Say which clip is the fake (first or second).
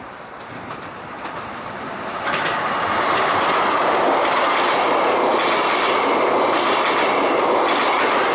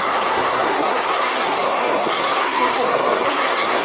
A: second